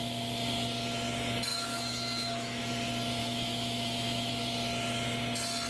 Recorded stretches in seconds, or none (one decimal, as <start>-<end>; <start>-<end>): 0.0-1.5; 2.6-3.2; 4.3-5.7